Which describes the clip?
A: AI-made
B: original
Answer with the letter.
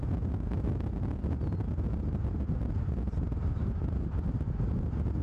B